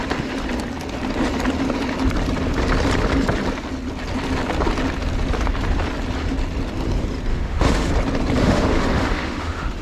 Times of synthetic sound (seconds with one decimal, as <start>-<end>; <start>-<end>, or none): 7.3-7.9; 8.4-9.8